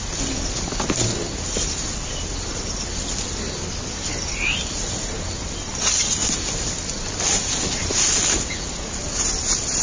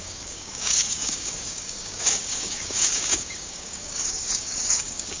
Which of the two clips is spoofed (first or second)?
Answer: second